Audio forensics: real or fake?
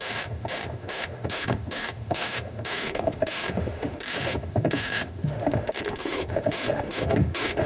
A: fake